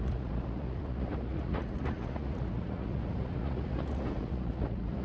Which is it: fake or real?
fake